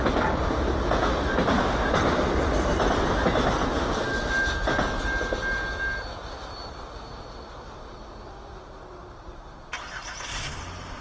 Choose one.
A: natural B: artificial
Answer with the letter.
A